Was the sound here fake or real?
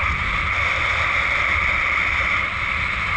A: real